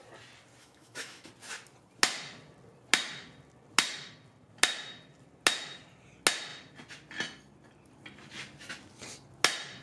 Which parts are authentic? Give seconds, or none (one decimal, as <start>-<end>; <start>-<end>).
0.0-0.6; 1.3-9.8

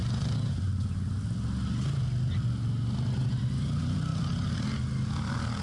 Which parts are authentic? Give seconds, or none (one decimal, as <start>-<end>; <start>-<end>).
0.6-4.1; 4.7-5.6